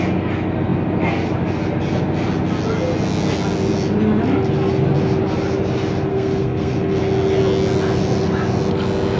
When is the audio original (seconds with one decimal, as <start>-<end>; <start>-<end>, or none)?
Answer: 0.0-6.1; 7.0-9.2